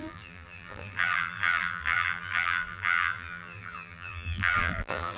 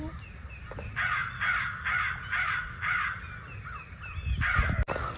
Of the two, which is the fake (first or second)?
first